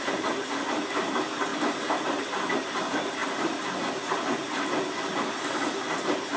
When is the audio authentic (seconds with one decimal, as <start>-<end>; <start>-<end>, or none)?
0.0-3.2; 3.7-6.4